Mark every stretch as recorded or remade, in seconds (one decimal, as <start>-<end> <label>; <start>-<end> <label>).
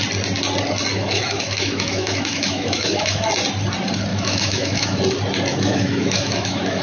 0.0-0.9 recorded; 0.9-3.3 remade; 3.3-4.1 recorded; 4.1-5.0 remade; 5.0-5.5 recorded; 5.5-6.8 remade